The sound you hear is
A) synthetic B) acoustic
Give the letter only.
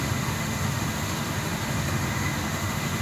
A